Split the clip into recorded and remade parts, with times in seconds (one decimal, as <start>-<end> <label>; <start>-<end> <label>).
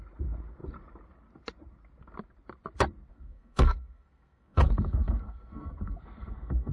0.0-3.1 recorded; 3.1-6.7 remade